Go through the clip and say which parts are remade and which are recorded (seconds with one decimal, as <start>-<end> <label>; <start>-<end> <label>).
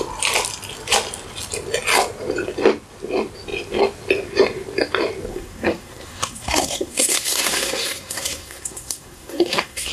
0.0-5.3 recorded; 5.3-9.9 remade